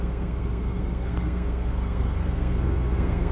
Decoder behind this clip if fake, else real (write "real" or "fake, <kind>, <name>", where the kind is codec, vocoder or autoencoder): fake, codec, SNAC